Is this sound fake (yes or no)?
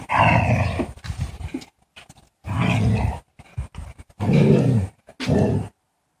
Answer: no